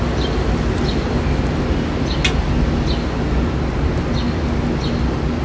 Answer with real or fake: real